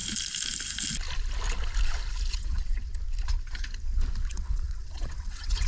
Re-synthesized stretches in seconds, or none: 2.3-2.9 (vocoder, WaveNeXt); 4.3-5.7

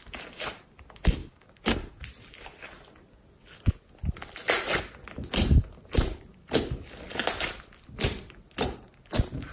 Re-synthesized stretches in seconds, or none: none